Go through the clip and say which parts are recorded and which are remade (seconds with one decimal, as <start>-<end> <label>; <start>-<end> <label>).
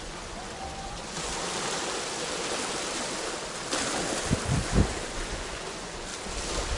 0.0-1.3 remade; 1.3-4.6 recorded; 4.6-6.1 remade; 6.1-6.8 recorded